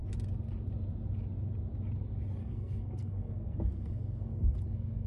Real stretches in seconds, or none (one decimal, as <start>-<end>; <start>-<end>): 0.0-2.4